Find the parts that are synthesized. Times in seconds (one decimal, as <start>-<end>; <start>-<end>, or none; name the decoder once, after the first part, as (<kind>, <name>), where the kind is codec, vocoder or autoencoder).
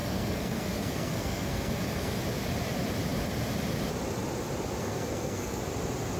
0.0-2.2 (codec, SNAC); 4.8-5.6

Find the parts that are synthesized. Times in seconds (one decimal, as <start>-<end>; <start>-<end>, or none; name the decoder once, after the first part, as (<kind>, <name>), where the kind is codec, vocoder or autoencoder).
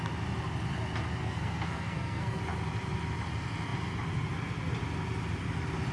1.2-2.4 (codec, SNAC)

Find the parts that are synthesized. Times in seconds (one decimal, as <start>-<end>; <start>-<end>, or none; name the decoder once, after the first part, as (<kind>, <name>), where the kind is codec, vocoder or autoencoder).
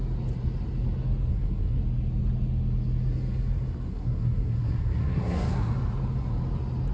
1.3-1.8 (codec, SNAC); 3.9-5.7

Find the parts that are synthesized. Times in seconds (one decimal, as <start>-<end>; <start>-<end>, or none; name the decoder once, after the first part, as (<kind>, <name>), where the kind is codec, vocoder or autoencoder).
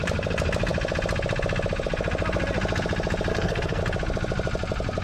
3.3-3.8 (codec, SNAC)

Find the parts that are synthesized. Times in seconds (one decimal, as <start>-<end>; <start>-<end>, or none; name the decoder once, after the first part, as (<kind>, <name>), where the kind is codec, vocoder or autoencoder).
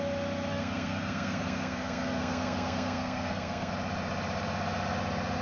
0.5-3.7 (codec, SNAC)